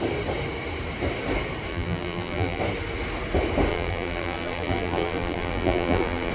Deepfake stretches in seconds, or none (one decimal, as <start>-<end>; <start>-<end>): 1.7-2.6; 3.7-6.3